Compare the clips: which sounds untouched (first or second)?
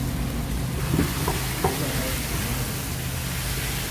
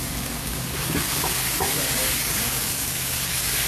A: first